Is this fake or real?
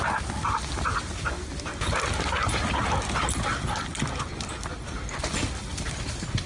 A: real